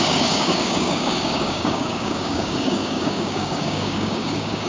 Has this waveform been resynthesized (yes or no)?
yes